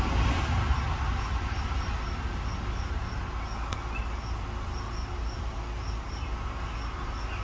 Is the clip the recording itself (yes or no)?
yes